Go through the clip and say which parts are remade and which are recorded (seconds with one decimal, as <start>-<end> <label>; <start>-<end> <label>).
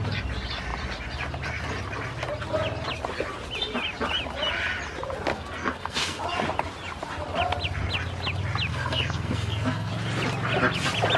0.0-5.3 recorded; 5.3-6.2 remade; 6.2-8.7 recorded; 8.7-9.9 remade; 9.9-11.2 recorded